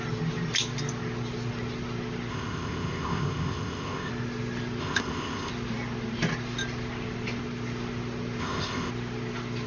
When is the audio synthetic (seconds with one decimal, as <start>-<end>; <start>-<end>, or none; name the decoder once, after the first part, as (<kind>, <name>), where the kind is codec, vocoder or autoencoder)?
2.3-4.1 (codec, ZipCodec); 4.8-5.5; 8.4-8.9